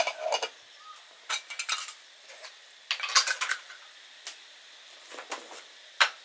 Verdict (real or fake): real